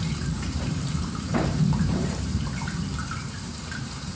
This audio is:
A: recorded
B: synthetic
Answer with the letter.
B